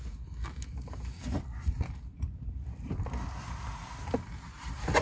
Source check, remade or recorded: recorded